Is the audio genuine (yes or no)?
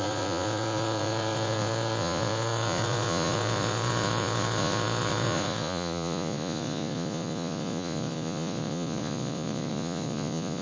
no